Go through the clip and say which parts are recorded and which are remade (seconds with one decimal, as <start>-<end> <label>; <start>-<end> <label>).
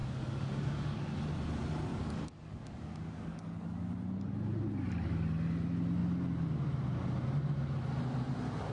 0.0-1.2 remade; 1.2-1.9 recorded; 1.9-3.9 remade; 3.9-8.7 recorded